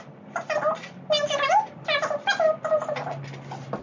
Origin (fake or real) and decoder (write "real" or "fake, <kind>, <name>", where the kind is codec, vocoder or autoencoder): real